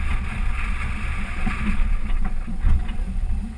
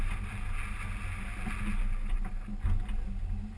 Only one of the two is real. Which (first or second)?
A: second